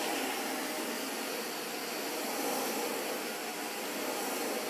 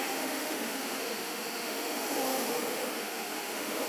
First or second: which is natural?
first